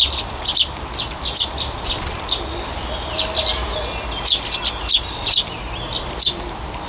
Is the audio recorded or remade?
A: recorded